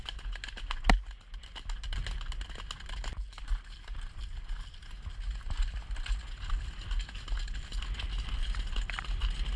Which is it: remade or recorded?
recorded